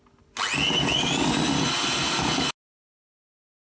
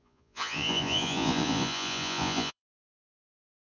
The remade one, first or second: second